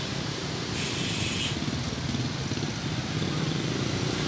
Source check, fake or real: real